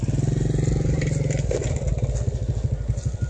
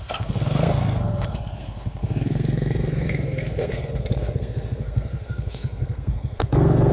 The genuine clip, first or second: first